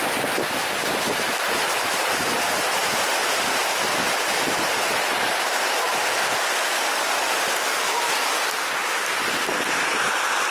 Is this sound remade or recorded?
recorded